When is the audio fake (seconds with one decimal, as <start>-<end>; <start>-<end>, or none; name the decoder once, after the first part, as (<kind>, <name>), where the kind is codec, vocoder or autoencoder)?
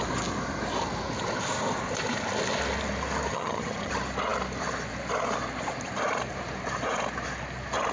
3.3-3.9 (vocoder, HiFi-GAN)